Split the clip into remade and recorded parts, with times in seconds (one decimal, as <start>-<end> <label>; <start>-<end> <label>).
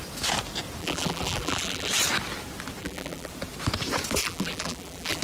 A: 0.0-0.8 recorded; 0.8-1.9 remade; 1.9-2.8 recorded; 2.8-3.3 remade; 3.3-4.2 recorded; 4.2-5.2 remade